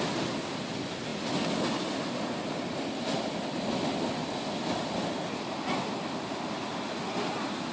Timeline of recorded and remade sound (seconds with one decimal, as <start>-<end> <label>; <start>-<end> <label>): 0.0-7.7 recorded